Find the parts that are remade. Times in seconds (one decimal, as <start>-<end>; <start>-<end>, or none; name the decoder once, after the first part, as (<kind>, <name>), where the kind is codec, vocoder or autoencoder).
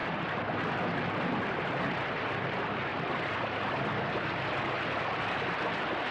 2.9-3.6 (vocoder, BigVGAN v2)